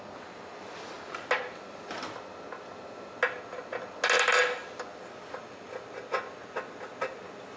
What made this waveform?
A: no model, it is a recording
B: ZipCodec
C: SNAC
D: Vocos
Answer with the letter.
A